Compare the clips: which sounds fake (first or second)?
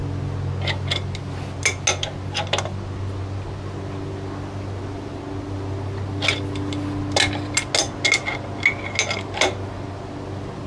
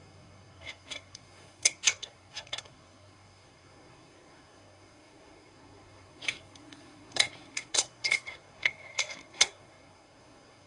second